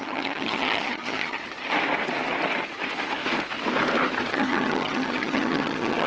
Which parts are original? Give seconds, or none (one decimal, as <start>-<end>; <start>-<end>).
1.4-4.3